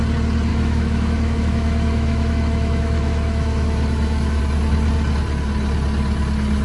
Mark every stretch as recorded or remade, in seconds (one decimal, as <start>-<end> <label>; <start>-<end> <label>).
0.0-0.5 recorded; 0.5-4.4 remade; 4.4-6.6 recorded